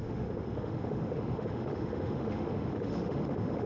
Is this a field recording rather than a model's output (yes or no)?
no